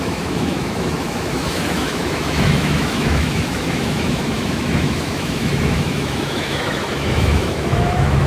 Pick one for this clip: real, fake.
fake